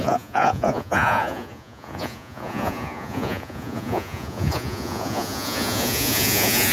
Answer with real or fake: fake